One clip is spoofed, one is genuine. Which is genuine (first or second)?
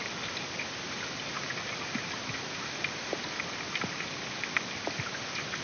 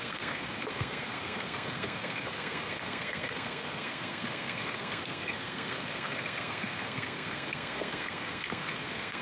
first